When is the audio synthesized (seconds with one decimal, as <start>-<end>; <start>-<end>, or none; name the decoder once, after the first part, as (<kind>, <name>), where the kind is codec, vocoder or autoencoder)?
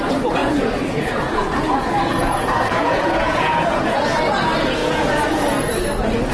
0.4-4.0 (vocoder, Vocos); 4.8-5.7